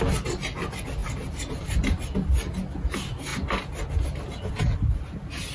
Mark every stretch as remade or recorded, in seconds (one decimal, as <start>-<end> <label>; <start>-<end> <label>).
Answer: 0.0-5.5 recorded